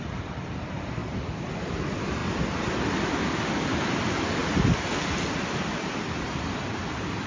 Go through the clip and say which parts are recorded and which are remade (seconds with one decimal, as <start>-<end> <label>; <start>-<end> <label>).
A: 0.0-1.0 remade; 1.0-1.8 recorded; 1.8-2.2 remade; 2.2-3.2 recorded; 3.2-4.4 remade; 4.4-5.8 recorded; 5.8-7.3 remade